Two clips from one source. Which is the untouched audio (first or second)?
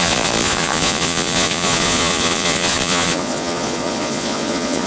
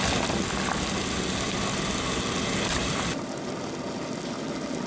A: second